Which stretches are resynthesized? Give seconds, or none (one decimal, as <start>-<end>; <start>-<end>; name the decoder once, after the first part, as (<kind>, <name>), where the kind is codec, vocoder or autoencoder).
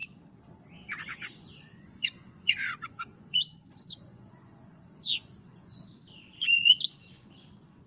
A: 1.0-7.9 (vocoder, Vocos)